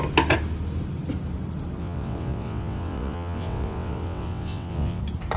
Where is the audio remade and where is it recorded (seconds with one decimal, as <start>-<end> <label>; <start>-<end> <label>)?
0.0-1.8 recorded; 1.8-5.0 remade; 5.0-5.4 recorded